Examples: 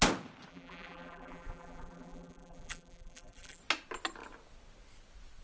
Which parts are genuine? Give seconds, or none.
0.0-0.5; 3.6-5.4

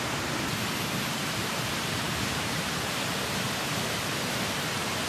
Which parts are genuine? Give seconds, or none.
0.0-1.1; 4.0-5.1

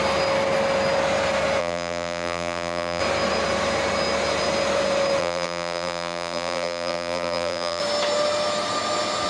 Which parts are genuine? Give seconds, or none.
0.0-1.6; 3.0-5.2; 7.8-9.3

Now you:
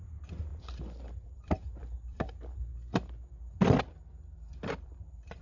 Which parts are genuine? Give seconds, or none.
2.7-4.1

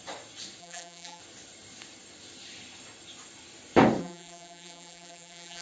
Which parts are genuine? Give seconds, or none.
0.0-0.6; 1.2-4.0

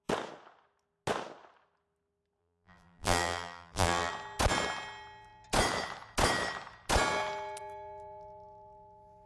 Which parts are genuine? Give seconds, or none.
0.0-2.4; 4.1-9.3